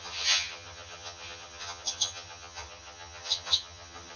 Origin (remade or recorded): remade